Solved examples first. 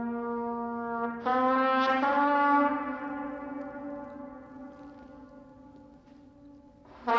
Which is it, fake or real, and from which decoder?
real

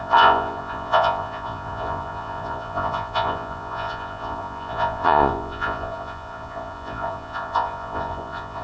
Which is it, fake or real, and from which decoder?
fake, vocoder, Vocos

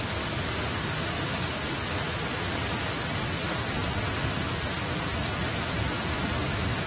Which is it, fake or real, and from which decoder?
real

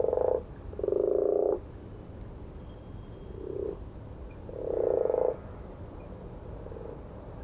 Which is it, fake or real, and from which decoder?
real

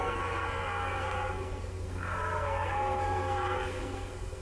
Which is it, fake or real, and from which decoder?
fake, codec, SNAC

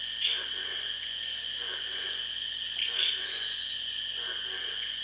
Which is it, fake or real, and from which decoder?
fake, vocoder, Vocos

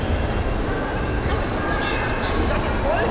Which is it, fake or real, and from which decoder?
real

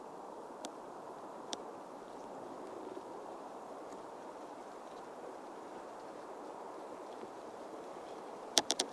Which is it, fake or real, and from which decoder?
fake, vocoder, BigVGAN v2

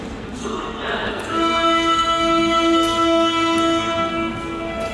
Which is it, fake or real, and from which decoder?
fake, codec, SNAC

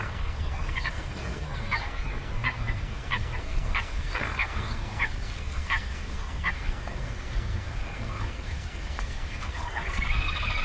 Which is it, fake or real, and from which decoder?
fake, codec, SNAC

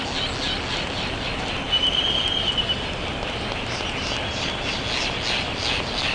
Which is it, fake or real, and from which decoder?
real